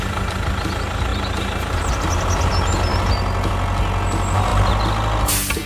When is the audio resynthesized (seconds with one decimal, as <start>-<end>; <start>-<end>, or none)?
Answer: 1.1-1.9